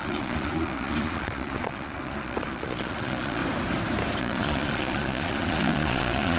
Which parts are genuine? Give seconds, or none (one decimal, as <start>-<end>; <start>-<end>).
3.4-4.2